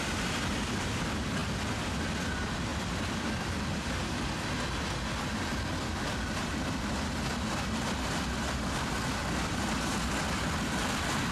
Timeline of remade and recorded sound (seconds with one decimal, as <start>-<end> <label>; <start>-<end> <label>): 0.0-2.7 recorded; 2.7-4.3 remade; 4.3-9.2 recorded; 9.2-9.7 remade; 9.7-11.3 recorded